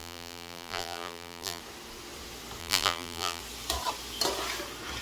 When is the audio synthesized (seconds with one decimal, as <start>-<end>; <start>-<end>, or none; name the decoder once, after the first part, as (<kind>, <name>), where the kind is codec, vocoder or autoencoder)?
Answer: 0.0-1.6 (vocoder, BigVGAN v2); 2.6-3.4